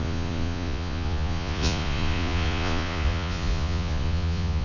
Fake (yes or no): yes